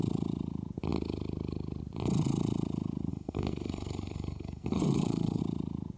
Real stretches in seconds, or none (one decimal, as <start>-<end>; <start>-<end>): 0.0-3.1; 5.4-6.0